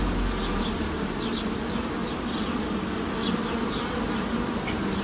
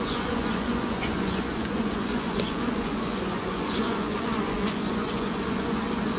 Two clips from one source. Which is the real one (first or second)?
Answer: first